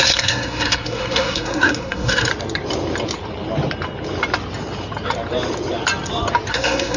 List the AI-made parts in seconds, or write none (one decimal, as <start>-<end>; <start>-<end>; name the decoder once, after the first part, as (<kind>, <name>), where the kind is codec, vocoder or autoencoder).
0.0-2.3 (codec, SNAC); 6.5-7.0